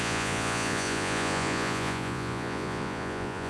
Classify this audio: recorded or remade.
remade